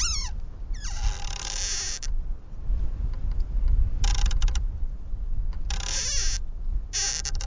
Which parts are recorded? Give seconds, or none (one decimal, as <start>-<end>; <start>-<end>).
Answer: 0.0-7.5